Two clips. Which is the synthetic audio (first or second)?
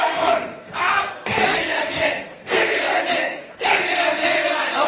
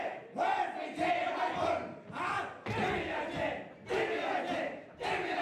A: first